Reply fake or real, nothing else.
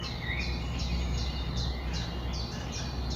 real